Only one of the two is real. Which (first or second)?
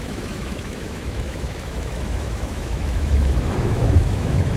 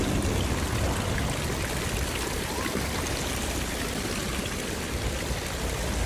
second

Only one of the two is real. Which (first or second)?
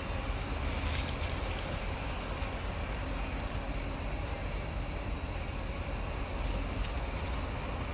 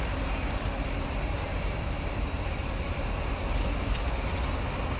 first